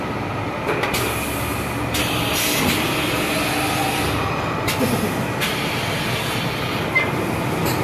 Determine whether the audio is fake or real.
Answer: real